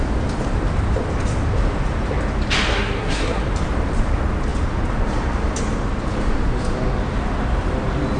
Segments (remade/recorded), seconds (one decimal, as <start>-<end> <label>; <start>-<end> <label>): 0.0-2.7 recorded; 2.7-3.4 remade; 3.4-8.2 recorded